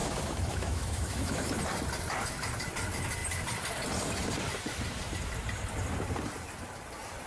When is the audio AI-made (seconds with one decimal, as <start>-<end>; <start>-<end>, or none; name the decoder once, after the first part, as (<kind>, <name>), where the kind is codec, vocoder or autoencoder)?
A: 0.0-1.6 (autoencoder, DAC-VAE)